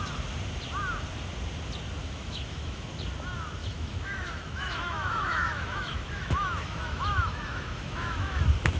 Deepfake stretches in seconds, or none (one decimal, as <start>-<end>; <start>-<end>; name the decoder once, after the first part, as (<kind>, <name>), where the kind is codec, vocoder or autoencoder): 2.0-2.9 (autoencoder, DAC-VAE); 3.6-8.4